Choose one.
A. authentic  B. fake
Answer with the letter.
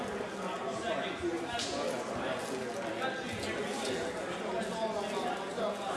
A